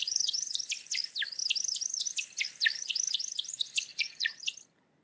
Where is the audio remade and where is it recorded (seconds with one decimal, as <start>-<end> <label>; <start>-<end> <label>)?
0.0-0.6 remade; 0.6-3.9 recorded; 3.9-4.4 remade; 4.4-5.0 recorded